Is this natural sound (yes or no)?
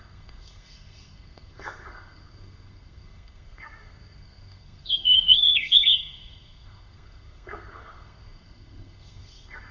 no